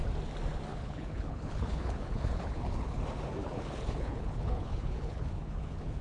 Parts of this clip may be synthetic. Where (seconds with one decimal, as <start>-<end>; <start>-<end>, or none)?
0.7-3.0; 3.4-6.0